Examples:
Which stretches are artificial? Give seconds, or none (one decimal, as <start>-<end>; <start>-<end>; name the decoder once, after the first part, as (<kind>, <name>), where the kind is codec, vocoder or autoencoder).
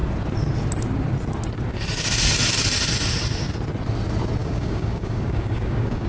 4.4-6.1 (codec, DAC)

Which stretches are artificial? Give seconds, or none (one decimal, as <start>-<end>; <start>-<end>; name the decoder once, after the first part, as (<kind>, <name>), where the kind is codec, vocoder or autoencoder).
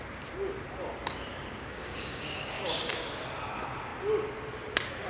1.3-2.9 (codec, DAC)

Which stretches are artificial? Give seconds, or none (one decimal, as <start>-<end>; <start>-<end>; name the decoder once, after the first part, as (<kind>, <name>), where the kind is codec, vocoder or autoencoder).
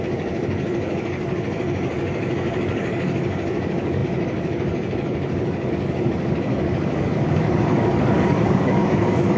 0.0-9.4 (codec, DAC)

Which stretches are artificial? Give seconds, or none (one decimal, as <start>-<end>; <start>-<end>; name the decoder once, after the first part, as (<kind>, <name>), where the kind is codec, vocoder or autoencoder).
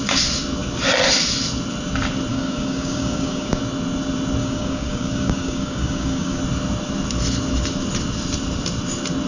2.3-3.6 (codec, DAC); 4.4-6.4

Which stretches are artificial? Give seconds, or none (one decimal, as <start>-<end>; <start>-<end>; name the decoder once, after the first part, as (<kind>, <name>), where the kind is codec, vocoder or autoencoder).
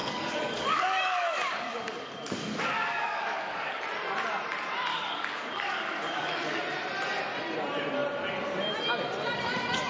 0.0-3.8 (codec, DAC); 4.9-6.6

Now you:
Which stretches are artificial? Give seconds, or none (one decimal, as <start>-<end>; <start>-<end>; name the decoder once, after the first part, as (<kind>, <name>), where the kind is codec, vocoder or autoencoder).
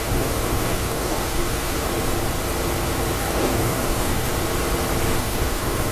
0.0-1.9 (codec, DAC); 3.2-4.3; 5.2-5.9